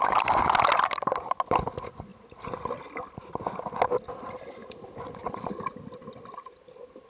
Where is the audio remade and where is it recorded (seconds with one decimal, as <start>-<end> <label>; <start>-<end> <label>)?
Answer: 0.0-7.1 recorded